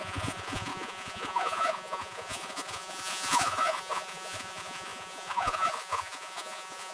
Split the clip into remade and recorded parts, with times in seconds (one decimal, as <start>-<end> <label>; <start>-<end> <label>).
0.0-6.9 remade